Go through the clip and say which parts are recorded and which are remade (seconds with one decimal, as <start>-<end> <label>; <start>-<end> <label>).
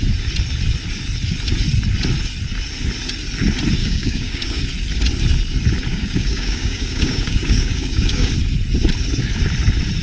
0.0-3.8 recorded; 3.8-4.6 remade; 4.6-5.9 recorded; 5.9-8.3 remade; 8.3-10.0 recorded